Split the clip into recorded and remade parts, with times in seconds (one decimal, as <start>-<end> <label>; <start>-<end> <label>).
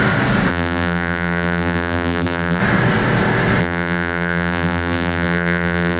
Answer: 0.0-0.5 recorded; 0.5-2.6 remade; 2.6-3.6 recorded; 3.6-6.0 remade